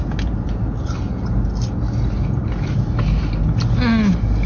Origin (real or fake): real